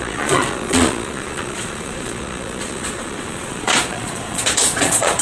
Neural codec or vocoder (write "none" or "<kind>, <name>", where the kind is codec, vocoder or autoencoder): vocoder, Vocos